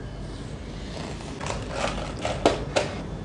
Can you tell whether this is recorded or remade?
recorded